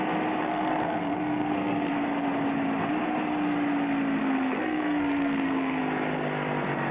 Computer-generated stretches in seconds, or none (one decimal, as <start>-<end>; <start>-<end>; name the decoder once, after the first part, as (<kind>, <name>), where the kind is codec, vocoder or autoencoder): 0.4-1.9 (codec, SNAC); 4.2-5.8